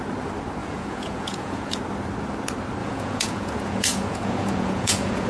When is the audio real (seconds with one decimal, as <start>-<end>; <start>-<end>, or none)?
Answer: 0.0-0.6; 1.8-2.8